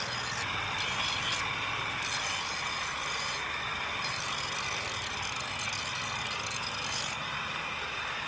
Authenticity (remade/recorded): recorded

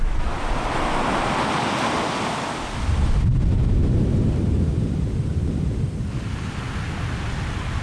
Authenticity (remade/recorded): recorded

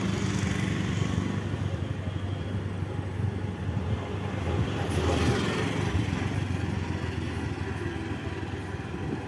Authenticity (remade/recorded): recorded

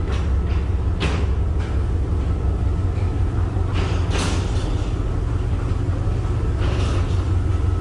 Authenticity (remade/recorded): recorded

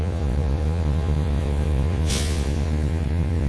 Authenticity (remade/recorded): remade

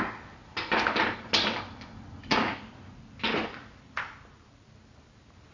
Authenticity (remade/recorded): recorded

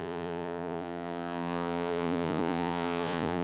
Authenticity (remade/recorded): remade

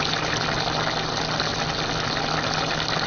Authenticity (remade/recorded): recorded